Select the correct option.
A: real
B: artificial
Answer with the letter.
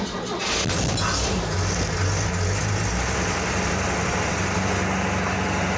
A